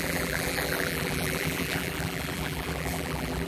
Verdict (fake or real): fake